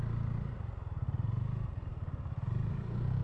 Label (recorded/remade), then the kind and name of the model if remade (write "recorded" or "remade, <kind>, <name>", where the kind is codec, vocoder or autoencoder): recorded